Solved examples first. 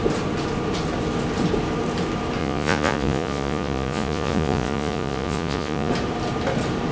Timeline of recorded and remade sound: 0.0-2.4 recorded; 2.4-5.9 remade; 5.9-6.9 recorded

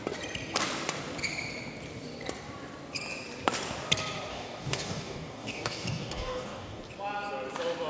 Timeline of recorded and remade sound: 0.0-4.3 recorded; 4.3-6.8 remade; 6.8-7.9 recorded

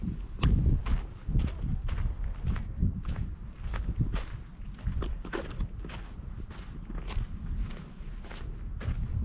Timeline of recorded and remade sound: 0.0-9.2 recorded

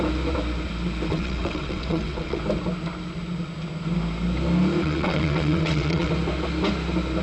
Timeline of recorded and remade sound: 0.0-1.1 recorded; 1.1-2.4 remade; 2.4-4.8 recorded; 4.8-6.1 remade; 6.1-7.2 recorded

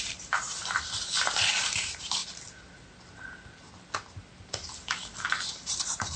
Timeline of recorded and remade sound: 0.0-0.6 remade; 0.6-1.2 recorded; 1.2-2.2 remade; 2.2-5.5 recorded; 5.5-6.2 remade